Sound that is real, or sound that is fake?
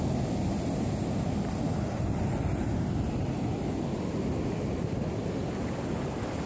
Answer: real